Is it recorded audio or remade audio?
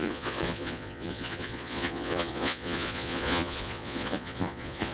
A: remade